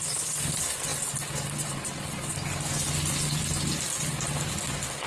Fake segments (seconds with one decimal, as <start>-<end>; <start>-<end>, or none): none